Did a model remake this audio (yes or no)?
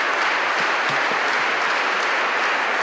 no